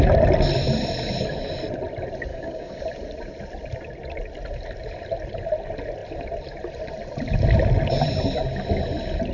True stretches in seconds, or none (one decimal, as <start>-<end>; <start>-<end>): 0.0-2.3; 2.8-9.3